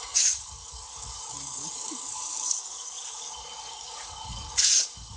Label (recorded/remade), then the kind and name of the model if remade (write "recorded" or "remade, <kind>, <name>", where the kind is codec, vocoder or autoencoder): remade, codec, DAC